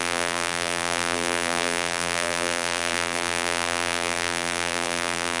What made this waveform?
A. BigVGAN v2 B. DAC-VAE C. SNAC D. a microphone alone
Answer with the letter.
A